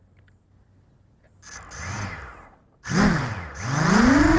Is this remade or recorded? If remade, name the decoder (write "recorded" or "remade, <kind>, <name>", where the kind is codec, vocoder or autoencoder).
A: recorded